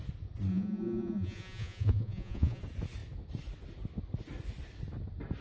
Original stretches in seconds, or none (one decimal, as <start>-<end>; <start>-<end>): 0.0-0.5; 2.6-5.4